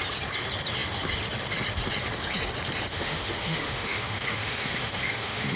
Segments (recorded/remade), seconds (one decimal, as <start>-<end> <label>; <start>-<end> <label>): 0.0-2.9 recorded; 2.9-5.6 remade